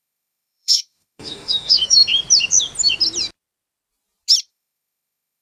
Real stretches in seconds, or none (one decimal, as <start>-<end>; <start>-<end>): 2.0-4.5